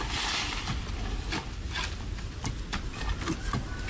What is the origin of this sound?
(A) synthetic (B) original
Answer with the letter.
B